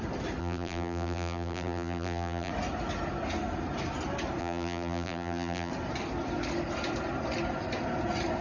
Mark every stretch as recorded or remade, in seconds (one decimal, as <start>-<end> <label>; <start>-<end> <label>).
0.0-0.4 recorded; 0.4-2.5 remade; 2.5-4.4 recorded; 4.4-5.7 remade; 5.7-8.4 recorded